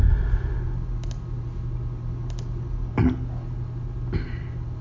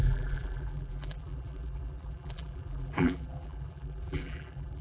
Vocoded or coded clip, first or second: second